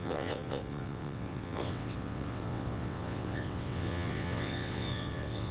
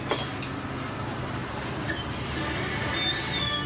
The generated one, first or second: first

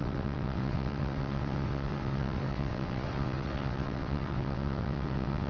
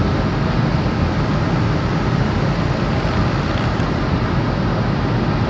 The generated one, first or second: first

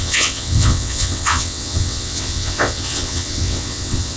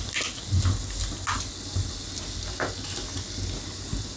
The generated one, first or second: first